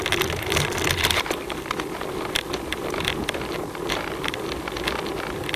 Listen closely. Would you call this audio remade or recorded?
remade